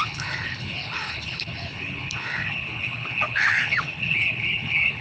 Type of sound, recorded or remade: remade